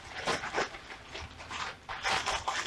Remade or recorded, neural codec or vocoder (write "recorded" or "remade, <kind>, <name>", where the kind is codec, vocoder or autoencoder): recorded